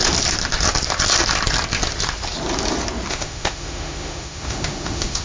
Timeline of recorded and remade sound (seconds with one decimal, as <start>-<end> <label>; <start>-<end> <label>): 0.0-3.1 recorded; 3.1-5.2 remade